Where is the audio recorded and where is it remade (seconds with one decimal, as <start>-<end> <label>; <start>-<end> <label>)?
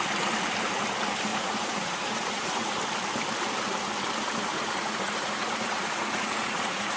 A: 0.0-1.3 recorded; 1.3-2.7 remade; 2.7-4.5 recorded; 4.5-7.0 remade